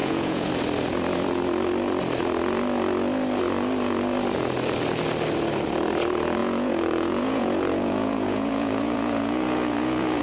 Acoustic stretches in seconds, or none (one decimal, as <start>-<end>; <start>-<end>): 0.5-6.4